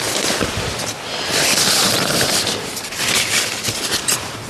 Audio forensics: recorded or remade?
remade